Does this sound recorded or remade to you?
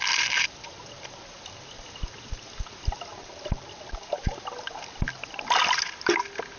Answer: recorded